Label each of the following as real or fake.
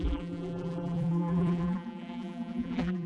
fake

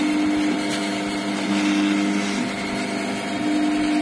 real